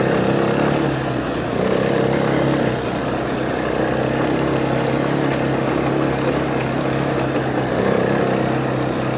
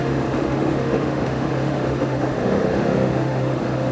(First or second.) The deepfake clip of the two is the second